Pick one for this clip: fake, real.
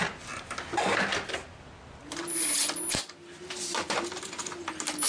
real